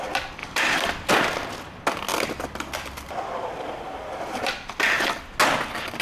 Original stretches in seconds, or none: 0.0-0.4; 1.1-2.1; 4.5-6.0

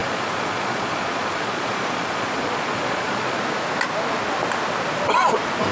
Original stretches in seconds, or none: 3.4-5.7